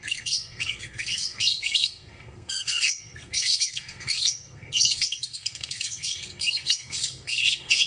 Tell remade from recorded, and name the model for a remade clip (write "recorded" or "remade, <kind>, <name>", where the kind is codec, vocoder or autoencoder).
remade, codec, SNAC